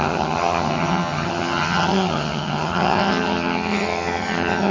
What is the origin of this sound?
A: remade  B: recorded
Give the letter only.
A